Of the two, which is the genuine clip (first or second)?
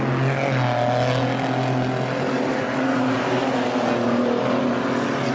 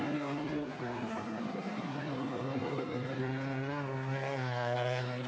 first